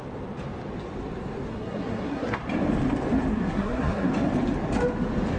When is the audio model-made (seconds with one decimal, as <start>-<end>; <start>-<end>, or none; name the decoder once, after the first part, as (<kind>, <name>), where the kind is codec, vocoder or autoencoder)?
1.5-2.4 (codec, SNAC); 3.3-4.1